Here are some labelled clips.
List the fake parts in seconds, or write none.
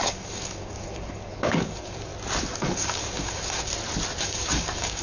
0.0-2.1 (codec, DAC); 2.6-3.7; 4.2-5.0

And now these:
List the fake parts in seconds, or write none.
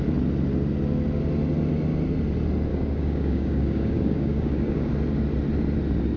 2.7-4.9 (codec, DAC)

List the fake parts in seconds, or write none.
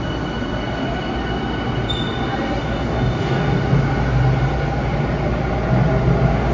2.6-3.6 (codec, DAC)